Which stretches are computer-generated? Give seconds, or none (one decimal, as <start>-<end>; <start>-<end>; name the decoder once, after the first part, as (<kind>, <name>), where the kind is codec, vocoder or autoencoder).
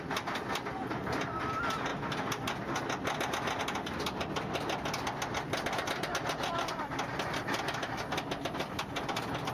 none